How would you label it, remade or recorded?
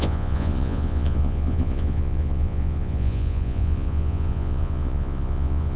remade